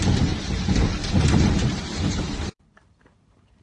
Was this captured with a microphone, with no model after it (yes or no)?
no